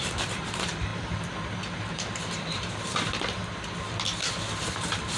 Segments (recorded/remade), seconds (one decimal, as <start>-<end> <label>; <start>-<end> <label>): 0.0-0.9 remade; 0.9-1.6 recorded; 1.6-3.4 remade; 3.4-4.5 recorded; 4.5-5.2 remade